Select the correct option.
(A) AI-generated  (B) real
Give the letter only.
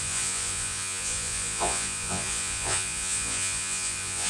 A